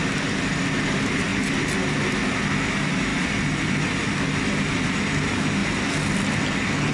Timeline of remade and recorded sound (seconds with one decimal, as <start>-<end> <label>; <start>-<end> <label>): 0.0-1.3 recorded; 1.3-2.0 remade; 2.0-3.1 recorded; 3.1-3.7 remade; 3.7-6.9 recorded